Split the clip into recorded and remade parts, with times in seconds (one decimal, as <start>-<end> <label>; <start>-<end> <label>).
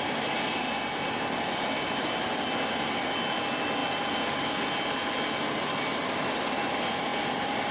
0.0-7.7 recorded